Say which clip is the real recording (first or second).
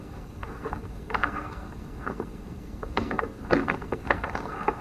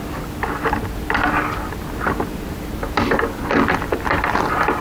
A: second